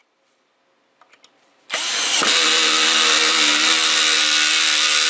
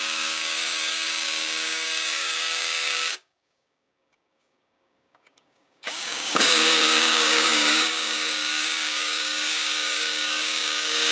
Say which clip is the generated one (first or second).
second